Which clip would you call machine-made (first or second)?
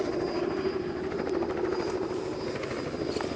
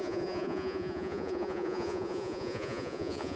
second